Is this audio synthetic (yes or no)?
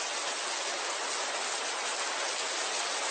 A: no